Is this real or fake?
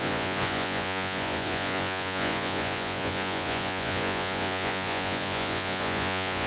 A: fake